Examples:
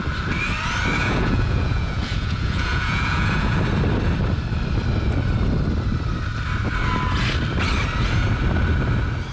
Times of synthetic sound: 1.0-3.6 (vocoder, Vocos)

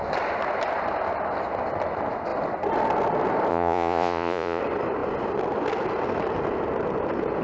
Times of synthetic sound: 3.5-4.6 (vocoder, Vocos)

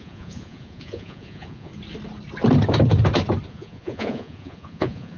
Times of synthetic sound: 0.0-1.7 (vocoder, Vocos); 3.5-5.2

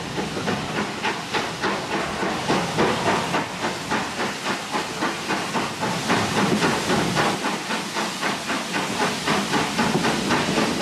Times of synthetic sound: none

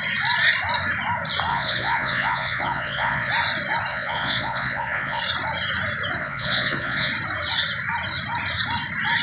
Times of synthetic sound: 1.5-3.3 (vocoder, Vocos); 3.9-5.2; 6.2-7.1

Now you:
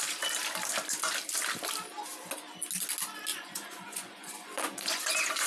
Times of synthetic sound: 3.3-5.5 (vocoder, Vocos)